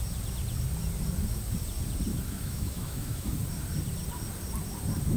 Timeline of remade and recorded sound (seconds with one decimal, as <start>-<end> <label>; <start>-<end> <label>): 0.0-2.1 recorded; 2.1-3.3 remade; 3.3-5.2 recorded